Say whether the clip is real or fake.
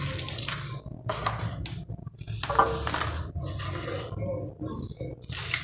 real